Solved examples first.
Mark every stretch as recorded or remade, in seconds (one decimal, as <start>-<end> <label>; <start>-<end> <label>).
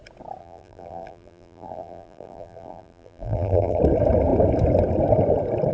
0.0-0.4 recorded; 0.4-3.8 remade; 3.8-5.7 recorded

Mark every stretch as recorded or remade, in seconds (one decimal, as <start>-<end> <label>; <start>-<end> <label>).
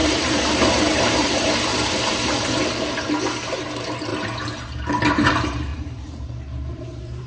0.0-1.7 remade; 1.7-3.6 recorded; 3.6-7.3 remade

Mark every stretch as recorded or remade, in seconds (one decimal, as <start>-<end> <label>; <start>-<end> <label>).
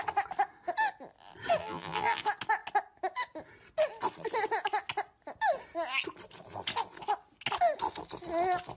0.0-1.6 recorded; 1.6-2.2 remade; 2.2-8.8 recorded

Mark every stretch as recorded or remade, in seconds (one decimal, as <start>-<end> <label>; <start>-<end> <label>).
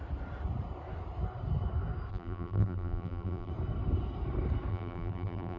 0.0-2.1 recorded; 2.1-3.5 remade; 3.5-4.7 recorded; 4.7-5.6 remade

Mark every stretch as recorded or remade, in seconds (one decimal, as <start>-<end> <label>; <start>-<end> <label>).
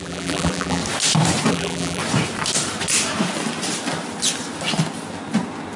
0.0-0.8 remade; 0.8-1.5 recorded; 1.5-2.0 remade; 2.0-5.8 recorded